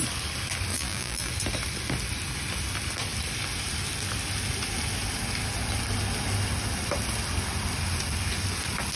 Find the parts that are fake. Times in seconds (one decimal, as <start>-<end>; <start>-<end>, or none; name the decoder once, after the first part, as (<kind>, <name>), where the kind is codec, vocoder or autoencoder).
0.7-1.3 (vocoder, BigVGAN v2)